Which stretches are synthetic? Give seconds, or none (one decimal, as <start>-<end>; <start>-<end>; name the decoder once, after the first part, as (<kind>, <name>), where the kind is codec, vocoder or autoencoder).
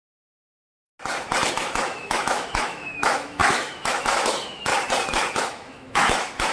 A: 0.0-0.9 (autoencoder, DAC-VAE); 1.5-4.7; 5.4-6.5